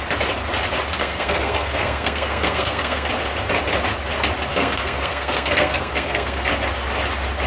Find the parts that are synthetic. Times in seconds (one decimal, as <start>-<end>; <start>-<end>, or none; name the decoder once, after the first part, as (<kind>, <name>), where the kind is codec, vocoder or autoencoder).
1.0-3.1 (codec, SNAC); 4.5-6.5